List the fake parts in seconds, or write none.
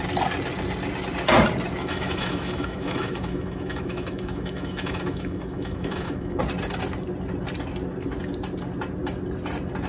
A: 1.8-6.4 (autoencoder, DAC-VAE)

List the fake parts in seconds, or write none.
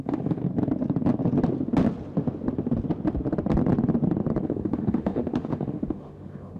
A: 0.0-0.4 (autoencoder, DAC-VAE); 4.4-6.6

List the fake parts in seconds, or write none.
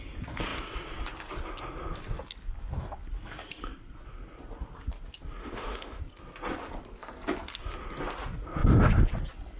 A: 5.4-6.0 (autoencoder, DAC-VAE)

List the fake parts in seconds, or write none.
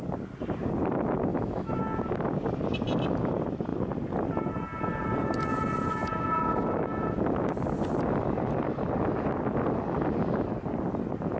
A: 1.3-1.8 (autoencoder, DAC-VAE)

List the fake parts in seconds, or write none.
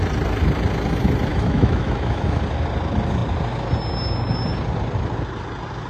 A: 1.3-2.4 (autoencoder, DAC-VAE)